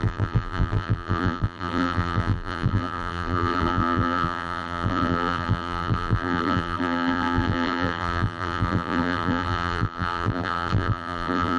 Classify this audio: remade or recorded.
remade